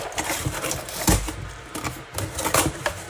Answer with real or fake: real